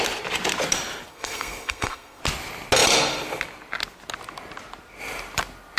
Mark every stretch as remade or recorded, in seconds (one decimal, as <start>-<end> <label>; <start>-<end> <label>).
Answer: 0.0-1.1 recorded; 1.1-2.2 remade; 2.2-5.8 recorded